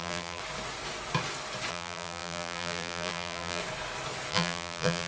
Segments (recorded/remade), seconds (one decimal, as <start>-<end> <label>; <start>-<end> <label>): 0.0-0.4 remade; 0.4-1.7 recorded; 1.7-3.6 remade; 3.6-4.3 recorded; 4.3-5.1 remade